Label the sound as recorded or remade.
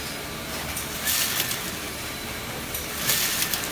recorded